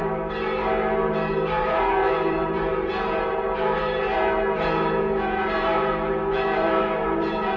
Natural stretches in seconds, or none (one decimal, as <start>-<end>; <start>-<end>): 0.0-1.1